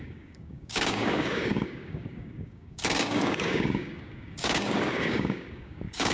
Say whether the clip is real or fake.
fake